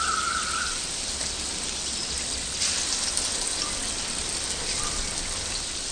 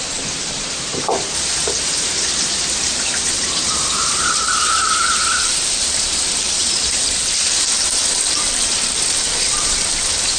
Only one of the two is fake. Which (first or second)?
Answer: second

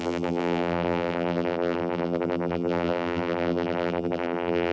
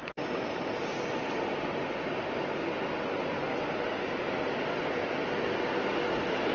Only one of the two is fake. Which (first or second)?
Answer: first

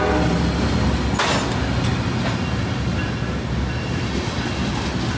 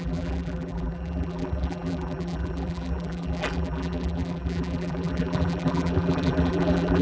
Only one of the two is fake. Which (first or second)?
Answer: second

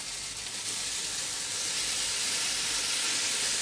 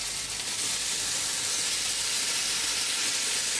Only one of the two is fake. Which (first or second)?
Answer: first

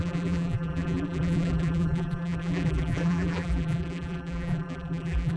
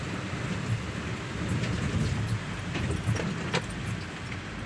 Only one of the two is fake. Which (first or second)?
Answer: first